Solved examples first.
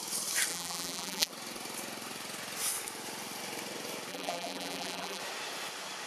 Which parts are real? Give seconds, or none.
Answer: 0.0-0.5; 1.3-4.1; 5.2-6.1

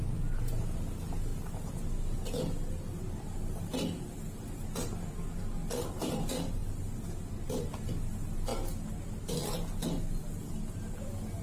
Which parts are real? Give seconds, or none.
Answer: 0.0-11.4

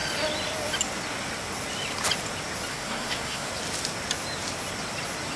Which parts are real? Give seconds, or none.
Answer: 0.0-2.7; 3.5-5.4